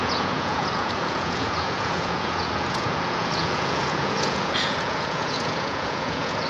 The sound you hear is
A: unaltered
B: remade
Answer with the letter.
B